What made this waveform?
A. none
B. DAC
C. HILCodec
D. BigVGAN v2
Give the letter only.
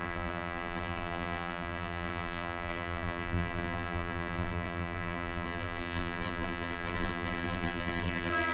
D